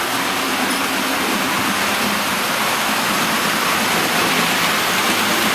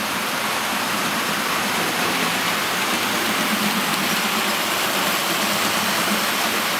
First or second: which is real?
first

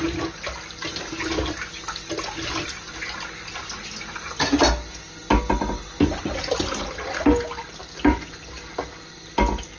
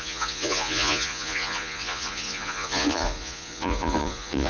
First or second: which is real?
first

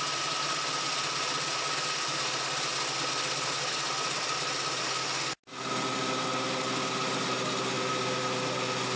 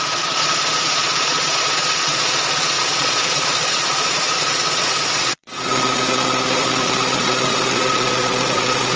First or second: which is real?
first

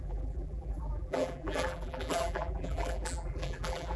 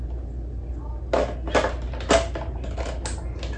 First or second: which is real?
second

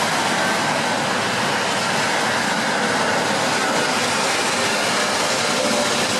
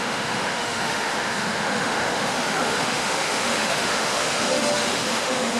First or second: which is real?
first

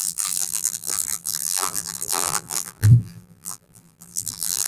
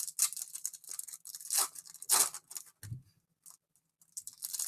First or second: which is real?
second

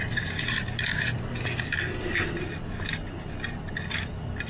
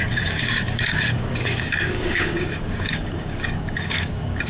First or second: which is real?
first